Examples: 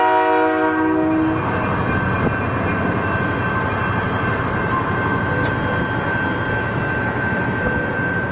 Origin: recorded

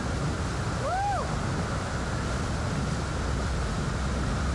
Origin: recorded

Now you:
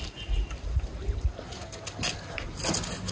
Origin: recorded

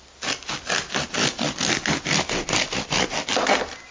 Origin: recorded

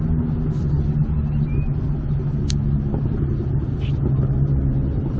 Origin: recorded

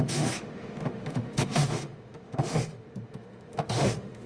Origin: remade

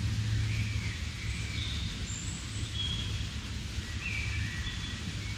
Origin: recorded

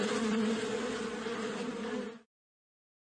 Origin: recorded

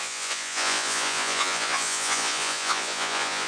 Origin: remade